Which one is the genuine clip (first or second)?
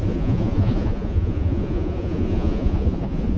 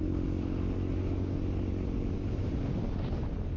second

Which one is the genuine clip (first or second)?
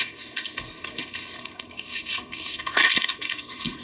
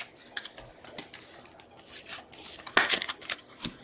second